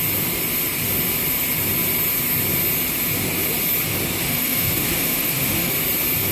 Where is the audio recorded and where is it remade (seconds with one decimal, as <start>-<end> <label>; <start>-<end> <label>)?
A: 0.0-4.2 recorded; 4.2-5.7 remade; 5.7-6.3 recorded